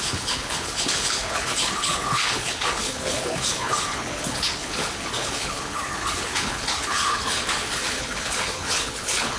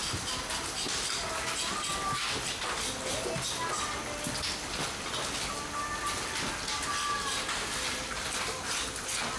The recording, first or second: second